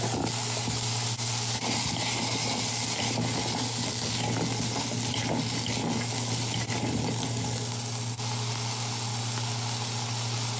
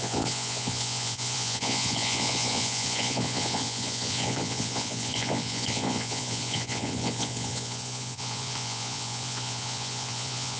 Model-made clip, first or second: second